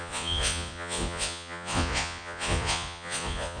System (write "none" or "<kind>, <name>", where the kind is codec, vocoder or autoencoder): vocoder, Vocos